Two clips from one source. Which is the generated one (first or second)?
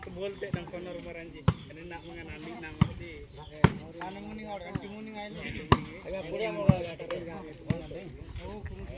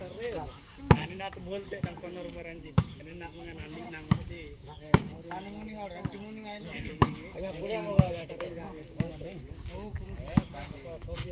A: second